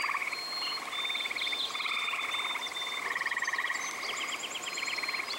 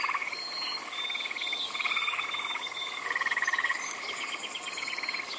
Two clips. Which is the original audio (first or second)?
first